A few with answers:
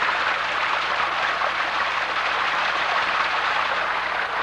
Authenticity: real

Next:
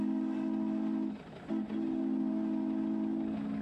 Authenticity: real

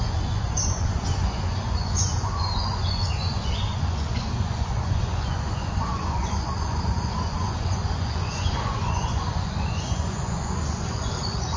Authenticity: fake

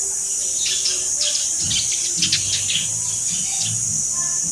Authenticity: real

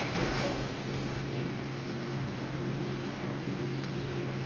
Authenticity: fake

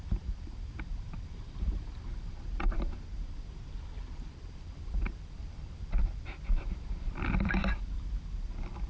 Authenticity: fake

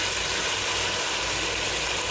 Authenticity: real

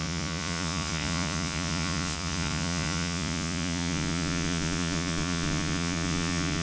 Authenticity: fake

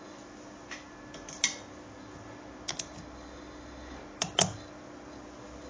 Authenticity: real